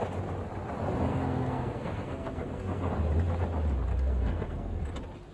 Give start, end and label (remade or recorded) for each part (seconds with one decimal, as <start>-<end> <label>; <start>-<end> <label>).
0.0-1.1 recorded; 1.1-2.9 remade; 2.9-3.9 recorded; 3.9-4.8 remade; 4.8-5.3 recorded